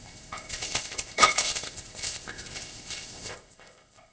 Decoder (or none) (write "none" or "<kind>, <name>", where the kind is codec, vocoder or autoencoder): codec, ZipCodec